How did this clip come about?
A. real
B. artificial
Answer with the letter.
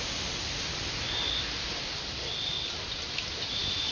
A